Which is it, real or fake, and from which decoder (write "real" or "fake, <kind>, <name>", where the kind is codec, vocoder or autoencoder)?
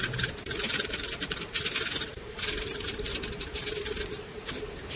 fake, vocoder, BigVGAN v2